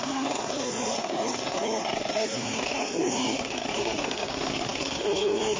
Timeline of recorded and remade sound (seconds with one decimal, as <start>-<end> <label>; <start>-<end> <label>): 0.0-5.6 remade